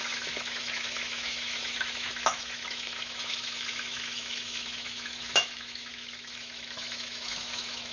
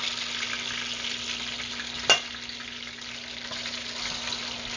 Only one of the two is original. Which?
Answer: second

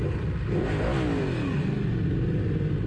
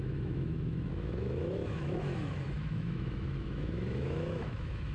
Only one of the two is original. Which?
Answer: first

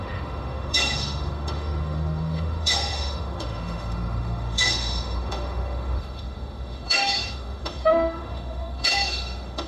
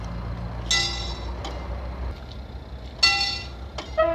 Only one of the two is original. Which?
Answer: second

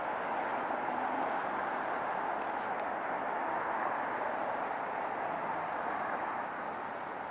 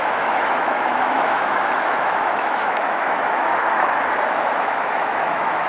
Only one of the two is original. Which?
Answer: first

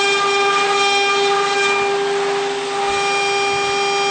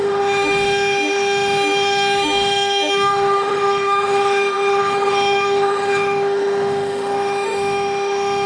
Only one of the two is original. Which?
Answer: first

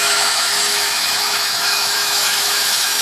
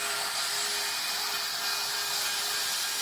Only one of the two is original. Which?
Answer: second